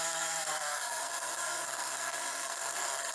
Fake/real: fake